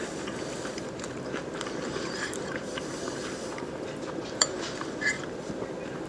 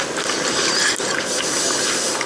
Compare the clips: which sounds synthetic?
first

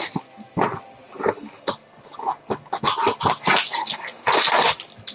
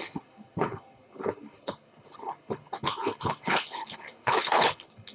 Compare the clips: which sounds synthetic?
second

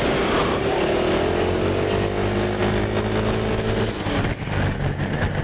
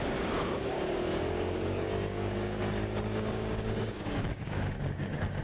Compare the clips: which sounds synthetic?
second